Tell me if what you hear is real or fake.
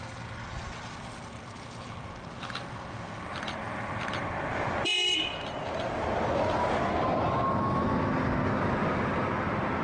real